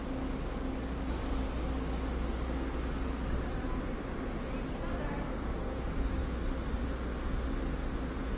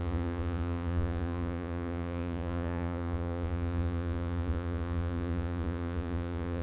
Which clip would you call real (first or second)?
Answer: first